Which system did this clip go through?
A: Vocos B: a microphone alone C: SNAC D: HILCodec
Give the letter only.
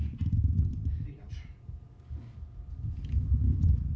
B